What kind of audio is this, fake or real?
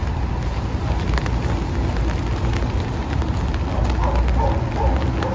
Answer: real